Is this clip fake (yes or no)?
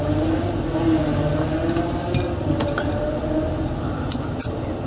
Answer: no